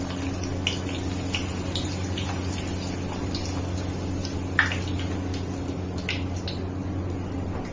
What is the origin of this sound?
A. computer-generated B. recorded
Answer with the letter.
B